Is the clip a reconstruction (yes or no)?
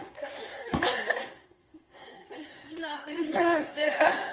yes